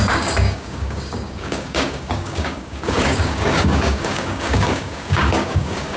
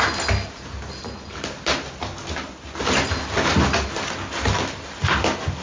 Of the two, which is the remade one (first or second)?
first